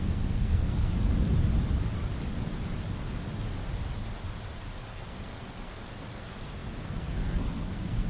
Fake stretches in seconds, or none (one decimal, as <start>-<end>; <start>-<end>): 0.0-1.1; 4.9-8.1